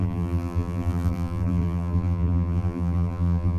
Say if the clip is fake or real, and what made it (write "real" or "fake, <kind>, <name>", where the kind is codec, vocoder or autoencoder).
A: fake, vocoder, BigVGAN v2